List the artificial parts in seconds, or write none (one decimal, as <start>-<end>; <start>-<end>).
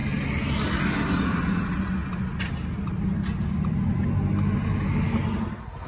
none